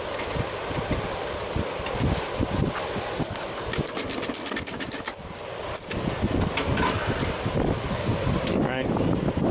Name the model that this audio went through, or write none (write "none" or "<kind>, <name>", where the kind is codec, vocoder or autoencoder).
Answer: none